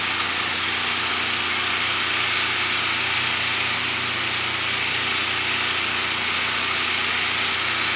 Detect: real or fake real